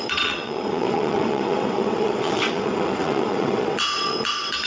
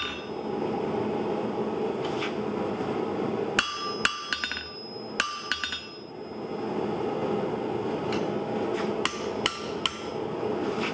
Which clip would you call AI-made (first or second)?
first